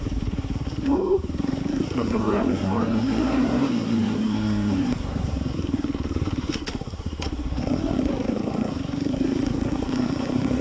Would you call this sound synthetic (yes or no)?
yes